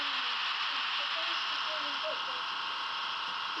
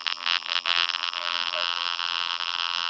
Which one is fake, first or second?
second